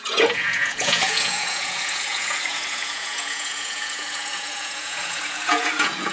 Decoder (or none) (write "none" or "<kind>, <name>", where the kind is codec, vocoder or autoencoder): vocoder, Vocos